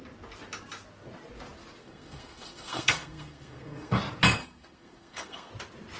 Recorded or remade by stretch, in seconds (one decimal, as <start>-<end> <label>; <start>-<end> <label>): 0.0-1.8 recorded; 1.8-4.0 remade; 4.0-4.4 recorded; 4.4-5.5 remade; 5.5-6.0 recorded